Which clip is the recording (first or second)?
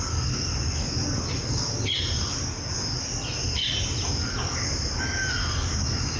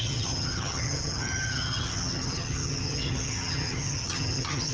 first